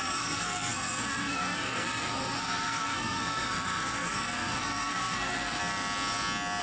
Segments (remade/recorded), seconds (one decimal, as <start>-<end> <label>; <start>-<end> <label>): 0.0-5.6 remade; 5.6-6.6 recorded